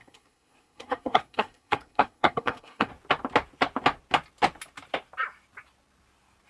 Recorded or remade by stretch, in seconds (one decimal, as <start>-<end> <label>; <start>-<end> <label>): 0.0-2.9 remade; 2.9-6.5 recorded